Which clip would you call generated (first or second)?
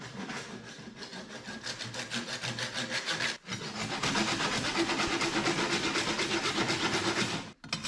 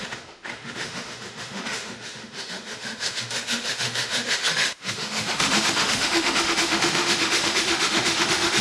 second